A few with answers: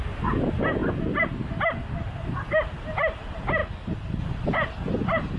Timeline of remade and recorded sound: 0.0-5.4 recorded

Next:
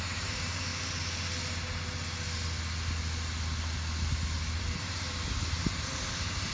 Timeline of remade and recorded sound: 0.0-0.7 remade; 0.7-4.6 recorded; 4.6-6.5 remade